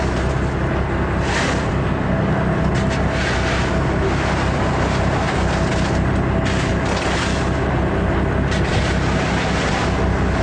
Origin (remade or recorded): recorded